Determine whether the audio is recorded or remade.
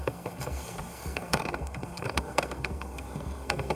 remade